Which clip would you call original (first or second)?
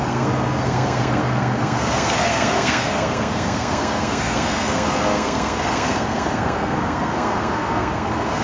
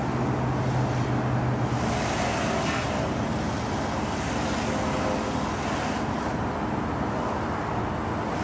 second